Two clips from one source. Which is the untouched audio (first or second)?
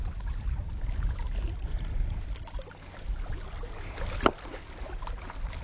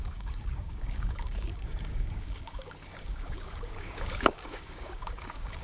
first